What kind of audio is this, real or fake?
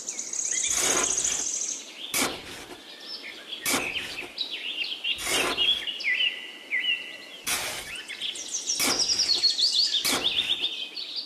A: real